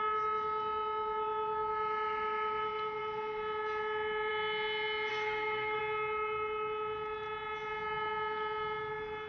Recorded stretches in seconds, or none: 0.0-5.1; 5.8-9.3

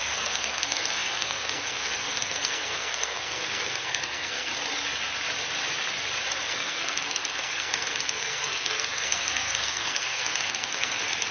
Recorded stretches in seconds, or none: 4.5-6.4

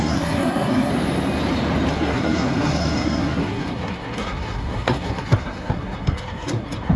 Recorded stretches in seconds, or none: 0.9-1.9